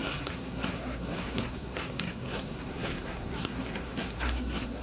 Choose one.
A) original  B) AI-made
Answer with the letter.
B